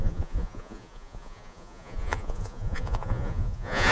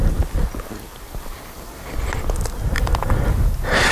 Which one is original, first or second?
second